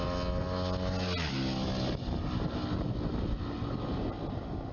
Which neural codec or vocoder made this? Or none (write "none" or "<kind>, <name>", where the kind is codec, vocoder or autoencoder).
none